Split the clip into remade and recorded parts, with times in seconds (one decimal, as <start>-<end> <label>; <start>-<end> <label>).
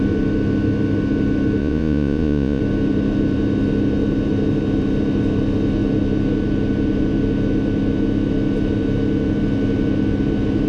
0.0-1.6 recorded; 1.6-2.6 remade; 2.6-10.7 recorded